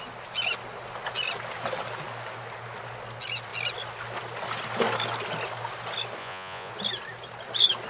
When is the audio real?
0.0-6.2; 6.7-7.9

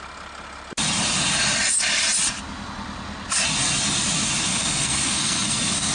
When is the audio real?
0.0-4.5

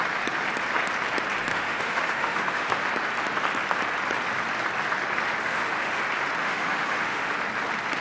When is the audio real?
0.0-1.5; 2.8-5.4; 6.0-6.4; 7.3-8.0

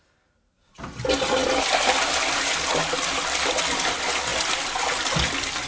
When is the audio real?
0.0-5.7

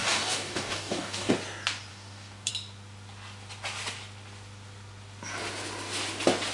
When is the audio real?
1.3-1.9; 2.5-6.5